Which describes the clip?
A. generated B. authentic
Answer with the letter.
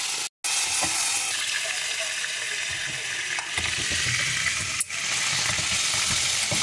B